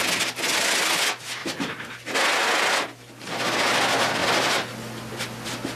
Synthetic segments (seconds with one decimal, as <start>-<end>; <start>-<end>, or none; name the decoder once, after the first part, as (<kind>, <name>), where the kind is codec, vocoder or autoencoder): none